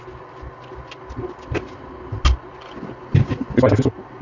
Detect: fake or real real